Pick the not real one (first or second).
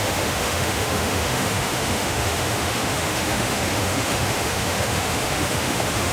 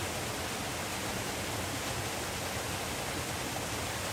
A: first